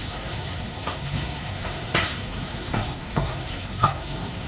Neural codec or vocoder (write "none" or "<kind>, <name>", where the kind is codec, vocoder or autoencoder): codec, SNAC